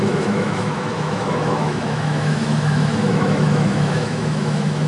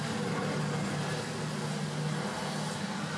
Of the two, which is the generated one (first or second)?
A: first